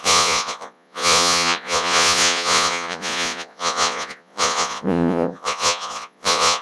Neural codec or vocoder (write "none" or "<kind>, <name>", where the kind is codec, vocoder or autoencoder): vocoder, Vocos